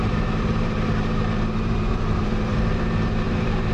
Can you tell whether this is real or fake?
fake